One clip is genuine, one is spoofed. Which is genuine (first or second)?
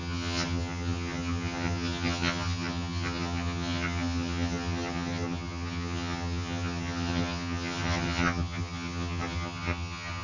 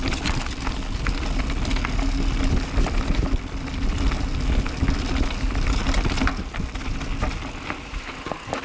second